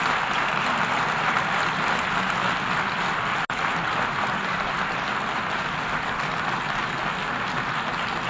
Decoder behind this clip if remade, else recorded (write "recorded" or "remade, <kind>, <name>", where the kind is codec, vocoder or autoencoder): recorded